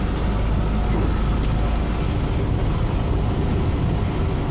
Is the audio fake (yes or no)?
no